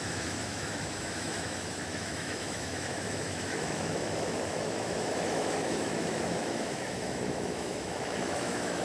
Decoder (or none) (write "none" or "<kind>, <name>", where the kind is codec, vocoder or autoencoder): autoencoder, DAC-VAE